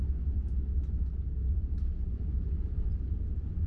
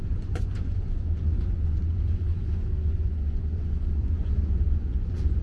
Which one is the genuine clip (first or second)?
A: first